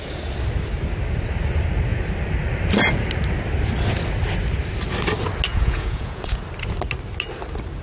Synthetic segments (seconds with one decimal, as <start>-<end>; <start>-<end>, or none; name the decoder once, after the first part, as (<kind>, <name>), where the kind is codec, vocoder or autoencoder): 5.5-6.4 (vocoder, Vocos)